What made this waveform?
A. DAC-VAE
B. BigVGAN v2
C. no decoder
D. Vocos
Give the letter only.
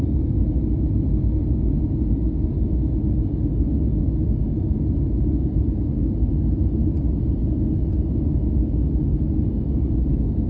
C